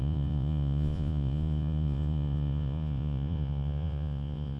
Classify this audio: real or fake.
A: fake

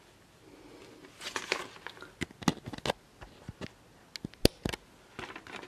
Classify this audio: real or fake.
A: real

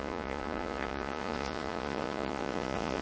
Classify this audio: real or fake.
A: fake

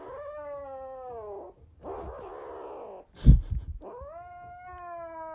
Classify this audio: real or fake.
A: real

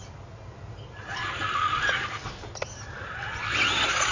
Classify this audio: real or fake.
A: real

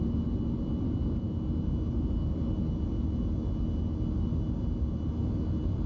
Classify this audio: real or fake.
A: real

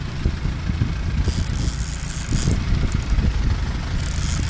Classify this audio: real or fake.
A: real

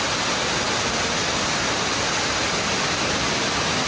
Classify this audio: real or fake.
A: real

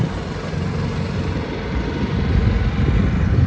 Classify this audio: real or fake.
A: real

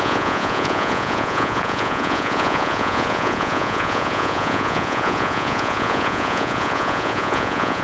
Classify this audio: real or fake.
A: fake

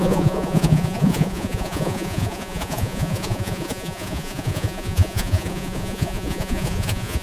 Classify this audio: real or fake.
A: fake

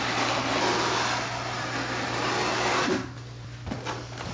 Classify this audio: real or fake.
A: real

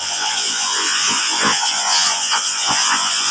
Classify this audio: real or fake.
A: fake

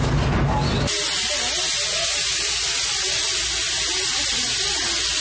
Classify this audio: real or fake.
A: real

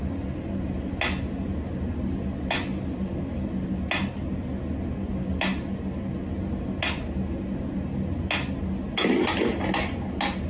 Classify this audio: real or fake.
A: real